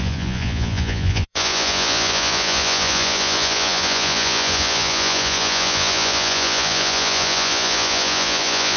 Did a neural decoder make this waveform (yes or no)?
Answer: yes